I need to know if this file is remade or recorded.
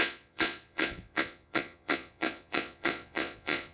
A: remade